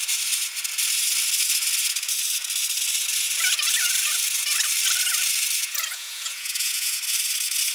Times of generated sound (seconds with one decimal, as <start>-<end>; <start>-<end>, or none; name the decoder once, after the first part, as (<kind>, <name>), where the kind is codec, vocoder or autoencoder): 5.6-7.0 (vocoder, Vocos)